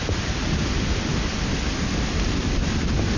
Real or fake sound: real